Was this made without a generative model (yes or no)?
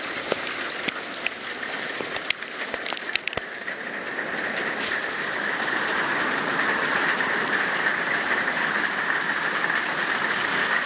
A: no